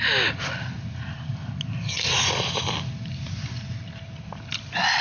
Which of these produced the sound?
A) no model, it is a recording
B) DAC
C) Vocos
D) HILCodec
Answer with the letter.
A